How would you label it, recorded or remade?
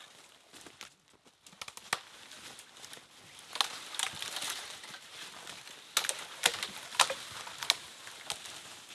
recorded